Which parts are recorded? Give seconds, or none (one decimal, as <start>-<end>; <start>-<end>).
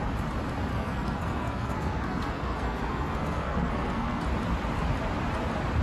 0.0-0.7; 4.2-5.8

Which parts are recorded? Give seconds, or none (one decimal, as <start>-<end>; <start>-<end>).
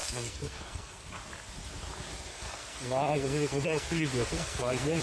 1.1-2.3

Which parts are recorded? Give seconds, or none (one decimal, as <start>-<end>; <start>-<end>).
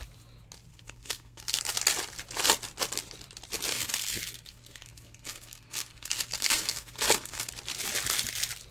0.0-0.7; 1.6-3.7; 7.5-8.7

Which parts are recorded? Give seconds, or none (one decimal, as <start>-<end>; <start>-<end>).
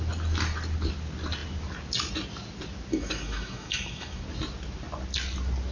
0.0-2.9; 4.2-5.7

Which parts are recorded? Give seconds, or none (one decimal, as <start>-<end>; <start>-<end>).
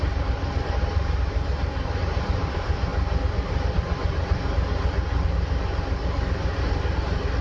2.9-7.4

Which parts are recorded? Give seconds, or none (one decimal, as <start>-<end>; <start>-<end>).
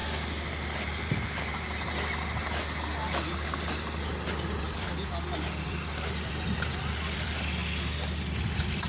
0.0-4.6; 7.6-8.2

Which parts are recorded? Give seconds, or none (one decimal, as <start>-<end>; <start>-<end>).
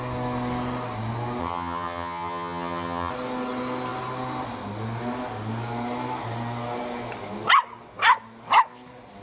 0.0-1.4; 3.1-9.2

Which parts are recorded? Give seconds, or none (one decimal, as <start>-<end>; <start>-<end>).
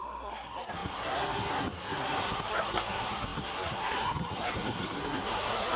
none